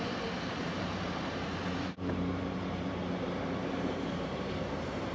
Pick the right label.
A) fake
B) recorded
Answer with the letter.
A